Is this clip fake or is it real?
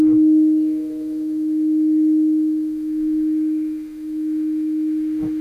fake